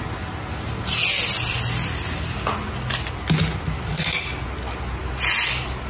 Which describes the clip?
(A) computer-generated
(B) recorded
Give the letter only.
B